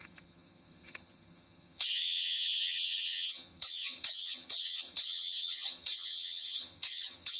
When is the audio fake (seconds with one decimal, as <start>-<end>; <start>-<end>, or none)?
0.0-7.4